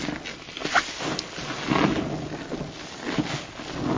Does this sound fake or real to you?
real